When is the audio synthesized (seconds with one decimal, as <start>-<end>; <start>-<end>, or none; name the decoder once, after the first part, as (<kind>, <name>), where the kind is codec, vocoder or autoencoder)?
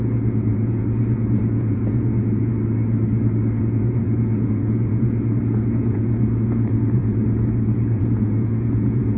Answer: 0.0-2.5 (vocoder, Vocos); 3.6-9.2